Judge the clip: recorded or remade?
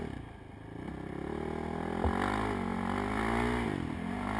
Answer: recorded